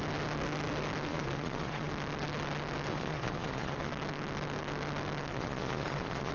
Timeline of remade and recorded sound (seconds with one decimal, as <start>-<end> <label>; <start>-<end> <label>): 0.0-1.1 recorded; 1.1-1.9 remade; 1.9-2.9 recorded; 2.9-3.9 remade; 3.9-5.3 recorded; 5.3-6.3 remade